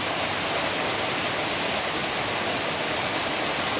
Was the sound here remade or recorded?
recorded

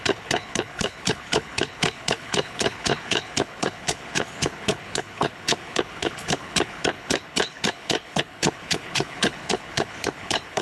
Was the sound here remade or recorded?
remade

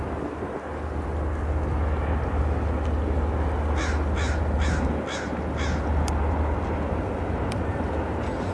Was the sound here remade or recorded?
recorded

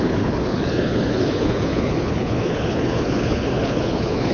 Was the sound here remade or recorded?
remade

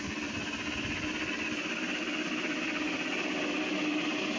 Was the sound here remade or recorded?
recorded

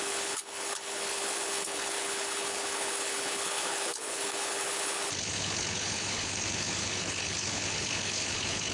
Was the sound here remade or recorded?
remade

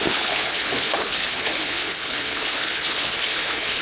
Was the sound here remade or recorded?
remade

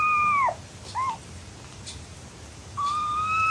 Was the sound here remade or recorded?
recorded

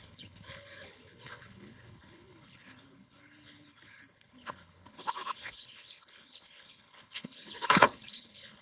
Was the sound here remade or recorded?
remade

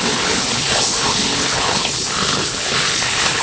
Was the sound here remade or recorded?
remade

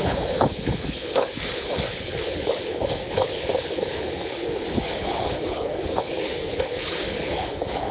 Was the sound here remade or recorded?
remade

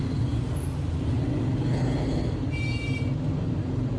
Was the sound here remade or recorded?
recorded